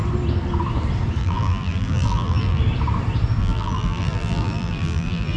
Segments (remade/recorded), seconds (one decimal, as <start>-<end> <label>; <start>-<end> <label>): 0.0-1.2 recorded; 1.2-2.6 remade; 2.6-3.4 recorded; 3.4-5.4 remade